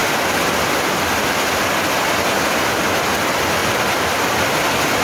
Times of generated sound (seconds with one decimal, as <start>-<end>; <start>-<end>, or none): none